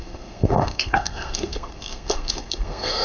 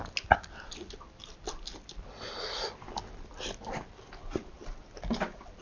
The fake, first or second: first